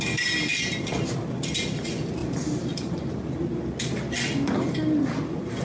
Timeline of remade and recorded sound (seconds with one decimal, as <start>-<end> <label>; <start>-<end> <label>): 0.0-0.5 recorded; 0.5-1.6 remade; 1.6-2.2 recorded; 2.2-3.1 remade; 3.1-5.6 recorded